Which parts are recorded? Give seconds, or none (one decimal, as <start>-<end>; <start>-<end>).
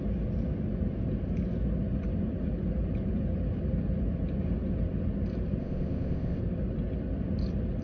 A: 0.0-5.6; 6.4-7.8